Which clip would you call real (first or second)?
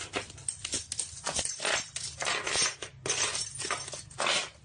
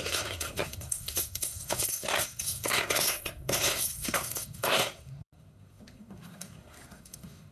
first